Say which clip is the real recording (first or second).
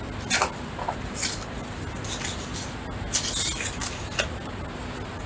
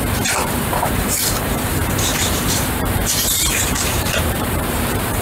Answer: first